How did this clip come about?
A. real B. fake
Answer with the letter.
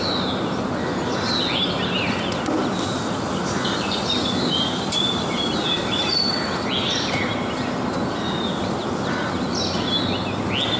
A